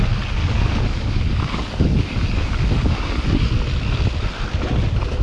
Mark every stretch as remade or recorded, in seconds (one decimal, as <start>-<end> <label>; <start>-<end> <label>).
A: 0.0-0.4 recorded; 0.4-3.5 remade; 3.5-5.2 recorded